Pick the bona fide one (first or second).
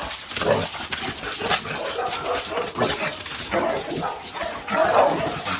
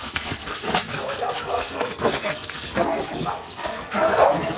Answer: first